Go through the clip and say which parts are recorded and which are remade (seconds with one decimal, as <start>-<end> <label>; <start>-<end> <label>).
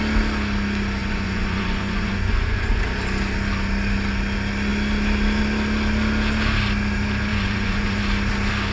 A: 0.0-1.0 recorded; 1.0-2.8 remade; 2.8-7.3 recorded; 7.3-8.0 remade; 8.0-8.7 recorded